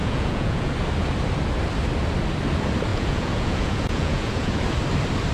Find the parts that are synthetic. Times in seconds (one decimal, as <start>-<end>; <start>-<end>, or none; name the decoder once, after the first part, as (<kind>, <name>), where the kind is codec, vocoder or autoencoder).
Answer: 0.0-0.7 (vocoder, Vocos); 2.9-4.6